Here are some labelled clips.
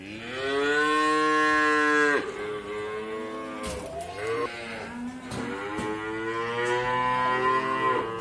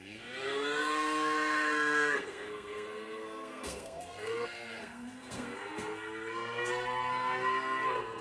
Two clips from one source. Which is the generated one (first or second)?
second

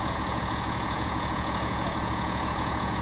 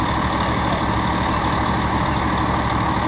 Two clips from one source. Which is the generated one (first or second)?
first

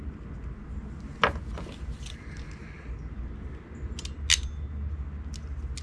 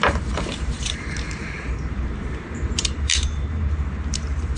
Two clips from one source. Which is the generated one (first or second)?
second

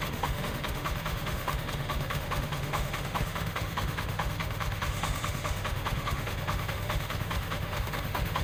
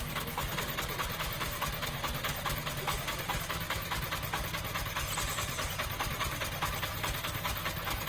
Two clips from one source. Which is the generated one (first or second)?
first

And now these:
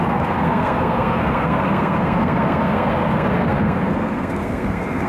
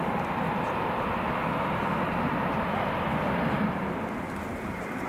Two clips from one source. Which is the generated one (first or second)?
first